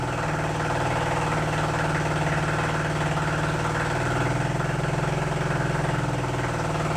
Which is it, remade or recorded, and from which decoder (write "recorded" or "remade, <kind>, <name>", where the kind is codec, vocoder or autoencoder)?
recorded